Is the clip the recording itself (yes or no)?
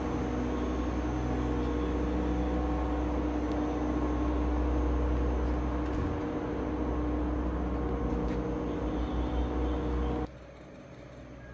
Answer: yes